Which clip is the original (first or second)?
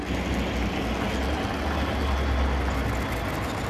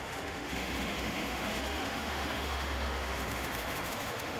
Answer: first